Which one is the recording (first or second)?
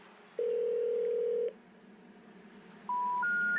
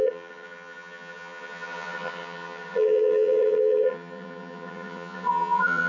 first